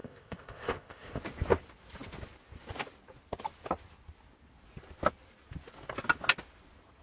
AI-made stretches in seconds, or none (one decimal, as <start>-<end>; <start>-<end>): 0.0-1.2